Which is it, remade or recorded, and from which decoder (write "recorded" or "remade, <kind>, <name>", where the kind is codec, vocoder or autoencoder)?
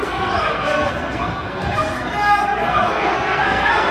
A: remade, codec, SNAC